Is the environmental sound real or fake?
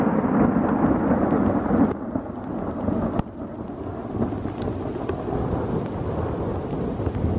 real